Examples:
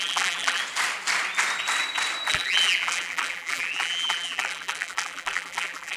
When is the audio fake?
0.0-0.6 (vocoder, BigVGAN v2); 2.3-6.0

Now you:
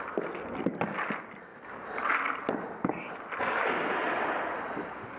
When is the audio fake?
1.5-2.2 (vocoder, BigVGAN v2)

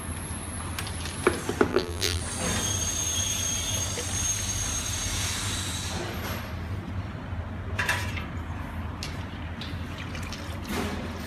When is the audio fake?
1.7-2.2 (vocoder, BigVGAN v2)

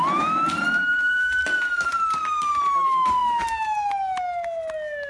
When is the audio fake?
0.0-3.2 (vocoder, BigVGAN v2)